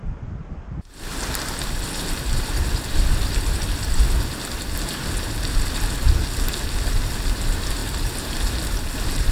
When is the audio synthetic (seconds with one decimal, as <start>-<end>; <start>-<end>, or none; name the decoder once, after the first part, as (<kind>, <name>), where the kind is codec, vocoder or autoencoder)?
none